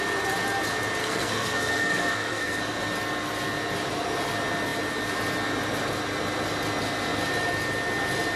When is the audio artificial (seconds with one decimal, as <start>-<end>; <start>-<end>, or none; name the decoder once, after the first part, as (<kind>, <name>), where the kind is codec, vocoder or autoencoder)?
1.0-2.6 (codec, SNAC)